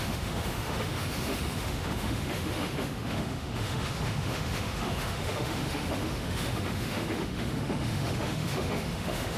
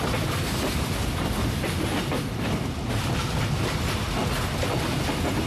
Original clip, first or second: second